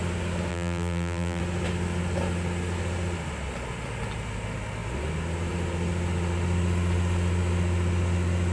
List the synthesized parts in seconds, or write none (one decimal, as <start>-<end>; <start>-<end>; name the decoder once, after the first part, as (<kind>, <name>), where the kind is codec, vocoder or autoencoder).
0.5-1.4 (vocoder, BigVGAN v2)